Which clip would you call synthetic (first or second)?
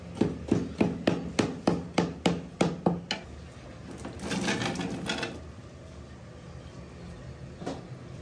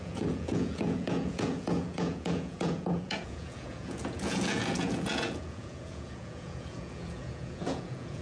second